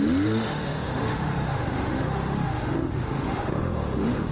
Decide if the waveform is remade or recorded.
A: remade